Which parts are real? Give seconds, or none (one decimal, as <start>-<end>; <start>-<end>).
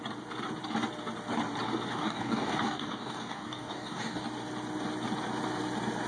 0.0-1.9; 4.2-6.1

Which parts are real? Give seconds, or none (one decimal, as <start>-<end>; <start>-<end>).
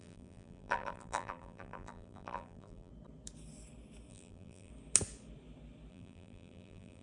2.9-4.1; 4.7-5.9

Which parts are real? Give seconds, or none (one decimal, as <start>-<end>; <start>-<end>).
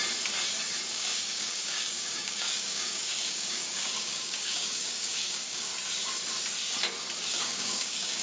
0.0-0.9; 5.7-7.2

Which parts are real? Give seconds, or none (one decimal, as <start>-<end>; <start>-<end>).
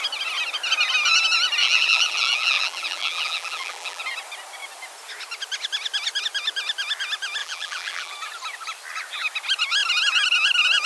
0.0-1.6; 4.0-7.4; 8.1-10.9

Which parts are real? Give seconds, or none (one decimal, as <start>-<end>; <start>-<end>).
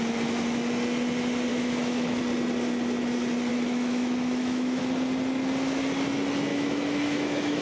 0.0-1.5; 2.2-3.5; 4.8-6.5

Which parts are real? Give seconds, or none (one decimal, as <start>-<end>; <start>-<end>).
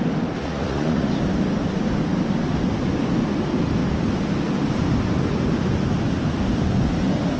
0.0-0.4; 1.1-7.4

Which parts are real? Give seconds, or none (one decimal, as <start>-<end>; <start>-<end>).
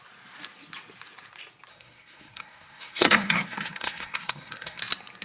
0.0-1.7; 4.8-5.2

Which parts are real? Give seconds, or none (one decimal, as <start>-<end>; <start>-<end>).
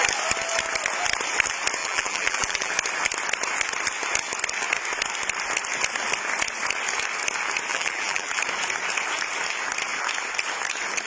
0.0-1.8; 2.7-7.7; 8.4-11.1